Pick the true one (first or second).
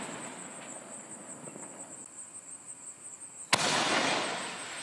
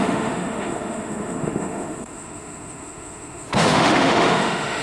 first